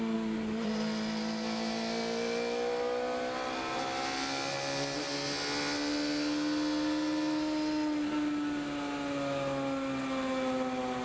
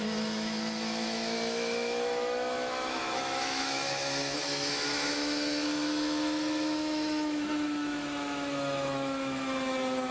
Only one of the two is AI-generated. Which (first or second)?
second